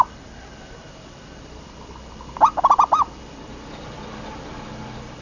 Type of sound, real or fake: fake